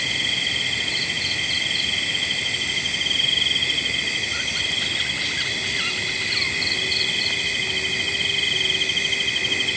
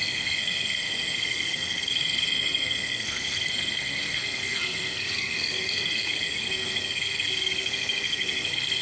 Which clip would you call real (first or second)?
first